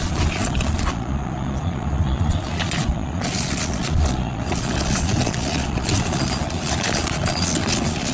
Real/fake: fake